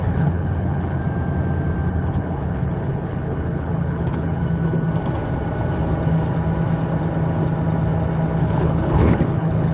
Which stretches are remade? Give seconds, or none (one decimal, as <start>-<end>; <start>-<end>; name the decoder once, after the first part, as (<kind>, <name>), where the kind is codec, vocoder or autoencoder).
0.0-1.0 (codec, HILCodec); 1.9-4.4; 8.4-9.7